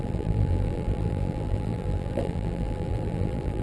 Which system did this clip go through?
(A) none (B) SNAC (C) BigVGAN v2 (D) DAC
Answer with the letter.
C